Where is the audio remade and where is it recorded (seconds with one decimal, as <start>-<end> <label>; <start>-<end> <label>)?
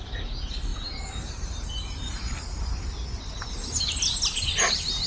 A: 0.0-5.1 recorded